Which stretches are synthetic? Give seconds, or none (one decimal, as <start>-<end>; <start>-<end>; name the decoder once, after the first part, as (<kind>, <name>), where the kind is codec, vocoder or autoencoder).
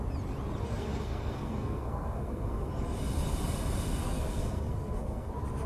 0.7-2.7 (codec, SNAC); 4.0-5.3